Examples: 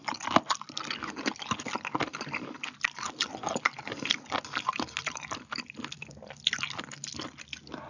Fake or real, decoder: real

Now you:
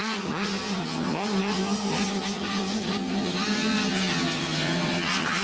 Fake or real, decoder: fake, vocoder, HiFi-GAN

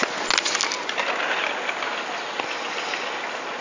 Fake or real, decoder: real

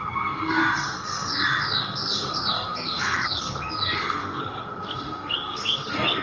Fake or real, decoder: fake, codec, SNAC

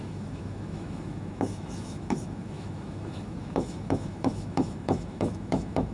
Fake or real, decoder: fake, autoencoder, DAC-VAE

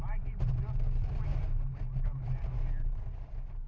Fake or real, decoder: real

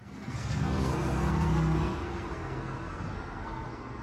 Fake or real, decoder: fake, codec, SNAC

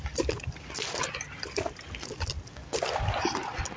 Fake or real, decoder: fake, vocoder, BigVGAN v2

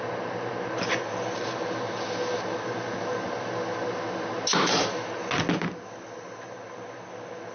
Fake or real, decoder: real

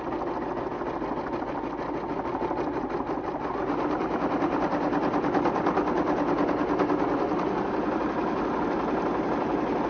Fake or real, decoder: real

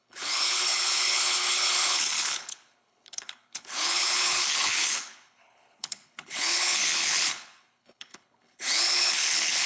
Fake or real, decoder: fake, codec, HILCodec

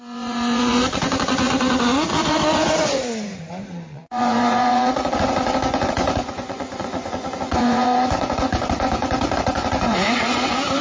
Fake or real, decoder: fake, vocoder, Vocos